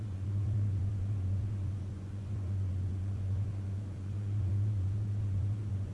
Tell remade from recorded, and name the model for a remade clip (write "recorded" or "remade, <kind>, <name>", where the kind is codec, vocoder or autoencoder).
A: remade, vocoder, Vocos